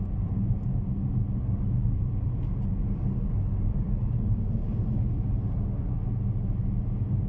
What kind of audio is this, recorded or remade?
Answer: recorded